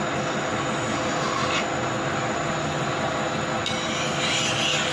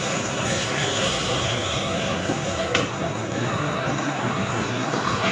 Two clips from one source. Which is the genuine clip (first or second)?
first